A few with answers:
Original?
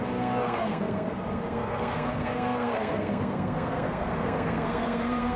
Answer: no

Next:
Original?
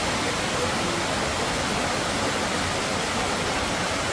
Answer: yes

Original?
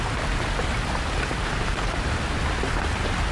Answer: yes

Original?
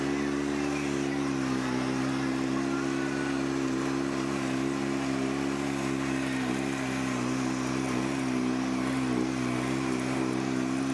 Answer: yes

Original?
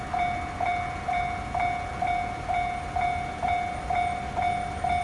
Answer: yes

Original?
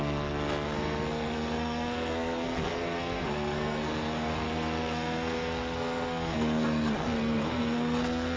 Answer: no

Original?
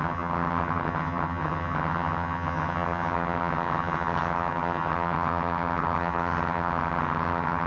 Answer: no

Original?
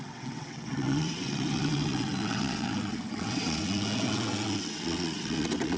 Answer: no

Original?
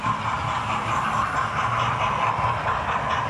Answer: yes